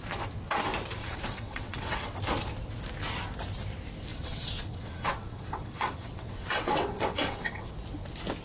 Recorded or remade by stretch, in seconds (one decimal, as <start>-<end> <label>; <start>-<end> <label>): 0.0-1.0 recorded; 1.0-2.2 remade; 2.2-4.1 recorded; 4.1-7.7 remade; 7.7-8.4 recorded